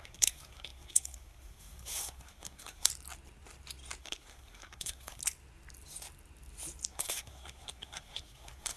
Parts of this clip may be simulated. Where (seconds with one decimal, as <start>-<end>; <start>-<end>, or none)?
0.0-2.9; 4.0-5.2; 6.9-8.8